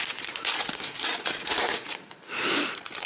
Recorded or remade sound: remade